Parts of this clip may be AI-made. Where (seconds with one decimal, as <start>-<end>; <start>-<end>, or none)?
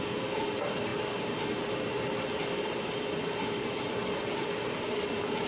none